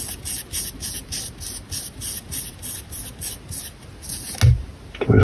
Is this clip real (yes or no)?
yes